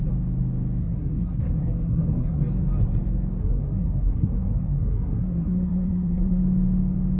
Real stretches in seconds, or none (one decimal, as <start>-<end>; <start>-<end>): 0.0-0.8; 2.4-3.4; 6.4-7.2